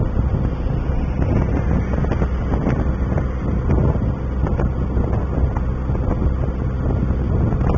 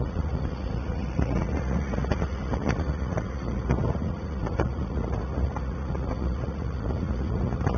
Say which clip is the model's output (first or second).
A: second